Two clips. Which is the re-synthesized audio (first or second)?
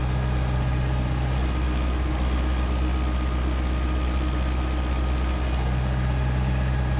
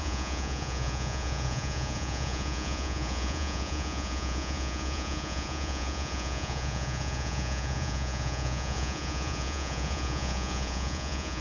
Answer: second